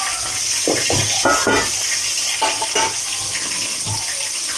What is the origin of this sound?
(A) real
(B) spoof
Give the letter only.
A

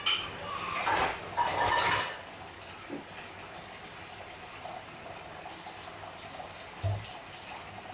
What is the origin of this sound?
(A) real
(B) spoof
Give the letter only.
A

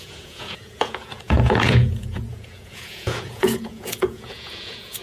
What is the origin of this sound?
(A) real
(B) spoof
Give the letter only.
B